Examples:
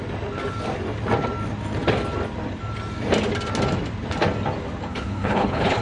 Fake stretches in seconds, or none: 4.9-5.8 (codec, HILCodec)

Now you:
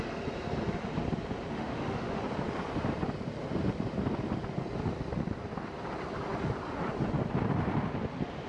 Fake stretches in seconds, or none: 1.5-2.2 (autoencoder, DAC-VAE)

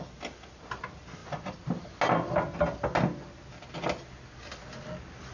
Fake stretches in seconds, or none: none

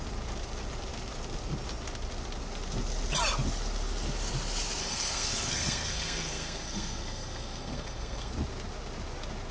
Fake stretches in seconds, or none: 4.8-8.3 (codec, SNAC)

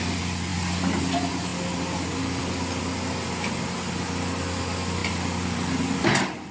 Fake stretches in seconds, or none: none

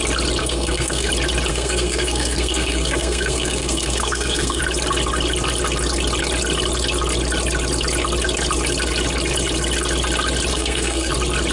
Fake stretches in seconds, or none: 0.4-1.1 (codec, SNAC); 1.5-4.6; 10.5-11.1